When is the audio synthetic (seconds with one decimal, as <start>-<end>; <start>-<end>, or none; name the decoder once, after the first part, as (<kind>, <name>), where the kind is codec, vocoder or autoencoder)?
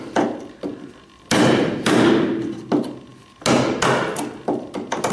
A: none